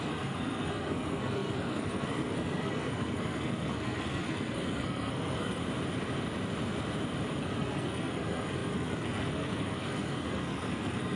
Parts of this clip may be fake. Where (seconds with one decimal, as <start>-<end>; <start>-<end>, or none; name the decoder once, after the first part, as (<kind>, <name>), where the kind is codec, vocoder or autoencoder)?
0.0-5.6 (codec, SNAC); 7.4-11.2